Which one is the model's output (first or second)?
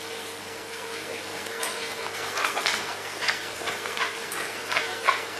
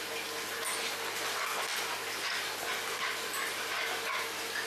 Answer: first